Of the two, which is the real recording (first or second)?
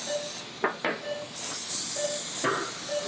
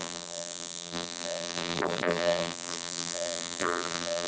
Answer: first